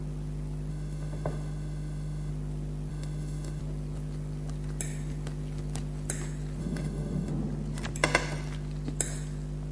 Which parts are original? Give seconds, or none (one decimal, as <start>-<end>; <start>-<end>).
0.0-0.7; 2.3-2.9; 3.6-6.6; 7.3-9.7